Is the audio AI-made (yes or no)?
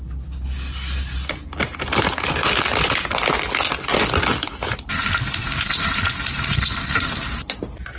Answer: no